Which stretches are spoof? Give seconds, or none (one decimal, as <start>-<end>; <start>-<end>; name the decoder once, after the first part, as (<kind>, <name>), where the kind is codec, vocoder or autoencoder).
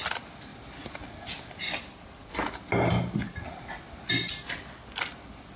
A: none